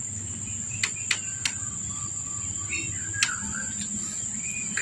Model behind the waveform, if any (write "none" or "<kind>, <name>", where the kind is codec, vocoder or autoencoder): none